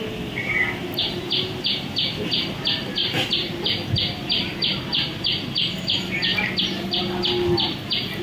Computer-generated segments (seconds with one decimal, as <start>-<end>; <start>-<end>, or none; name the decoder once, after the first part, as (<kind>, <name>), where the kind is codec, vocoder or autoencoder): none